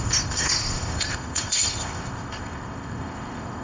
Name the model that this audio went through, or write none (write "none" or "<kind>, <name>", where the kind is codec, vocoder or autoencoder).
codec, ZipCodec